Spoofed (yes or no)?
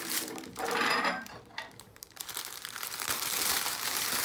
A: yes